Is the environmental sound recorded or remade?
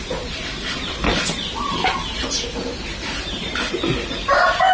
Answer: recorded